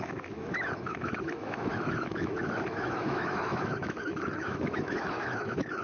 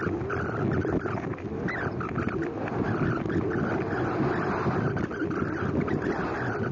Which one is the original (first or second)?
second